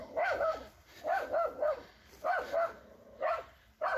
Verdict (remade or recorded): recorded